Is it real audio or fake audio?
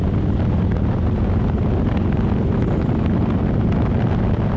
real